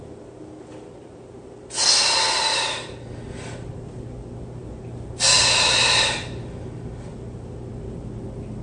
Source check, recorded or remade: recorded